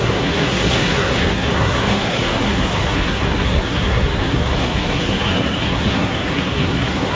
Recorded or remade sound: remade